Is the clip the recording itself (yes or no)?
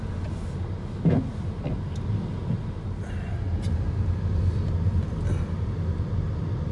yes